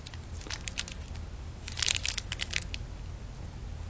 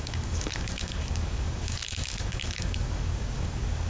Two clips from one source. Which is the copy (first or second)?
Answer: second